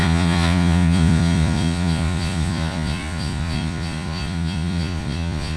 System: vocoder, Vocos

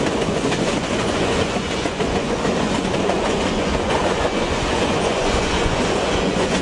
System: vocoder, Vocos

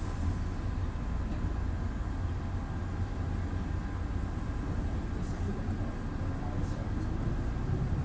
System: none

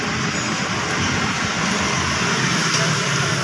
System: none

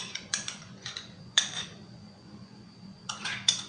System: vocoder, Vocos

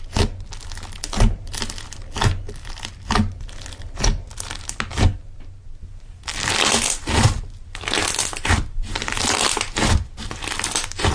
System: none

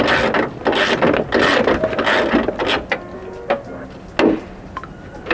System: none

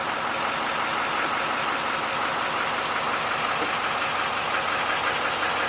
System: none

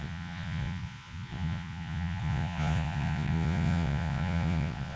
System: vocoder, Vocos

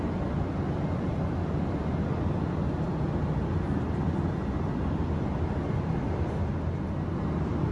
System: none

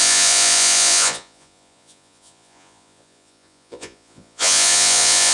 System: vocoder, Vocos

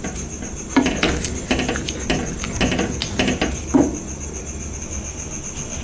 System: none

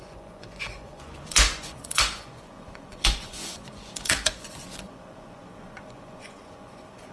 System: vocoder, Vocos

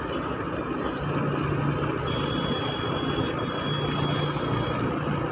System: none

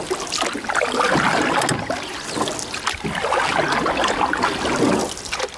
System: none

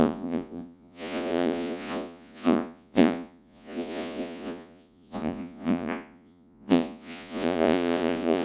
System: vocoder, Vocos